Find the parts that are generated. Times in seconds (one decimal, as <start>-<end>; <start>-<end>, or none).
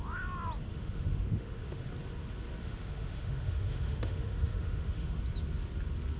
0.7-1.9; 2.6-5.2